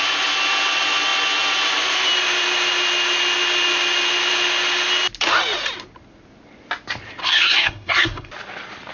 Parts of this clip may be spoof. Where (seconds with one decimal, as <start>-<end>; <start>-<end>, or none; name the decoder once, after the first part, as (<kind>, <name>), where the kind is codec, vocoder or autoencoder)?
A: 7.2-8.3 (codec, SNAC)